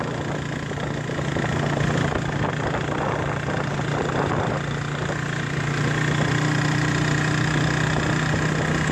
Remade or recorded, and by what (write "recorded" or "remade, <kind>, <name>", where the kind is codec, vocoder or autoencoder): recorded